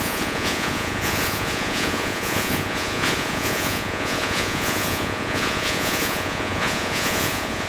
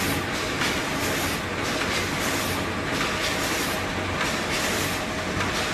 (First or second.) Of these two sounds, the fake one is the first